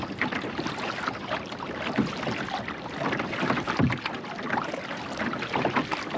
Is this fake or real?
real